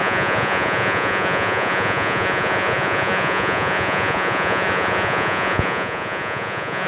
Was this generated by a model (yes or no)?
yes